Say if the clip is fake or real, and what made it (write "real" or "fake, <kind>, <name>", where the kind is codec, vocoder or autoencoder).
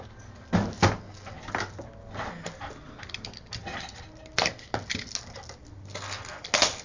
real